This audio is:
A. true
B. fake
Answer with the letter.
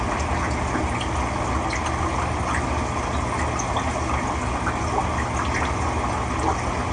A